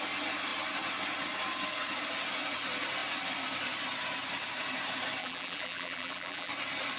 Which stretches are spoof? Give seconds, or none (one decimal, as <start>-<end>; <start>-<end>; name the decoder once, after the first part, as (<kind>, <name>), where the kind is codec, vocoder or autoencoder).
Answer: 5.2-6.5 (vocoder, BigVGAN v2)